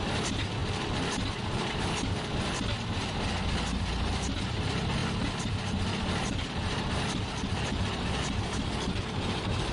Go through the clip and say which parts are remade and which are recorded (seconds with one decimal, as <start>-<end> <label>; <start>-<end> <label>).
0.0-0.6 remade; 0.6-3.9 recorded; 3.9-9.7 remade